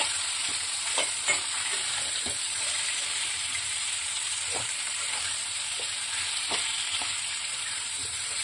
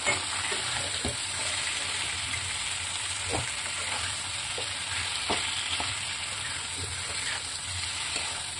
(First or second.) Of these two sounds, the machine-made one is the first